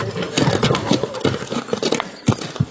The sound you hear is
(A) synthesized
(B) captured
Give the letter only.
B